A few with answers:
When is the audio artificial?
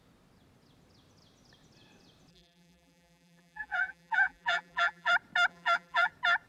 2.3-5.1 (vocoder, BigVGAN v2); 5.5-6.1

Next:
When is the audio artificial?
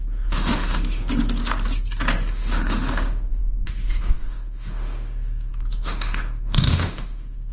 0.0-1.0 (autoencoder, DAC-VAE); 2.3-7.5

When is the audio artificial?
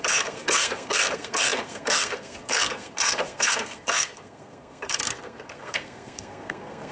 0.0-6.9 (codec, SNAC)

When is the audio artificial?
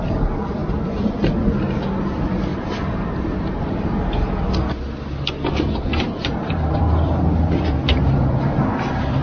2.5-3.9 (vocoder, BigVGAN v2); 5.9-6.8; 8.0-8.6